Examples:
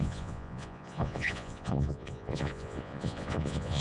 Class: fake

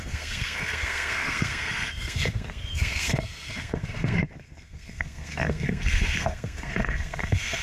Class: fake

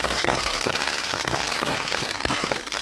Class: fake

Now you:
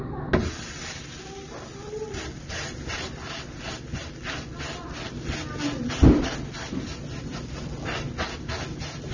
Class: real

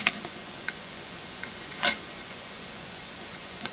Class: fake